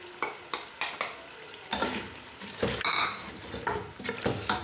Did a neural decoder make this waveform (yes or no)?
no